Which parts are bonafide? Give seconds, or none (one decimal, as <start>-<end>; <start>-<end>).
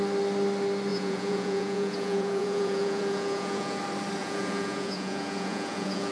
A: 0.0-0.9; 3.8-4.2